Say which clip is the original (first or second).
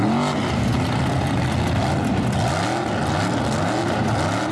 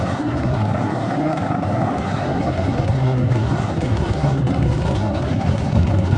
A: first